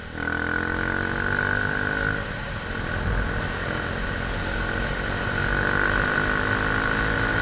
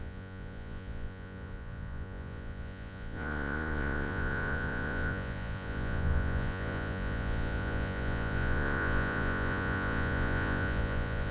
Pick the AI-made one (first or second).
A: second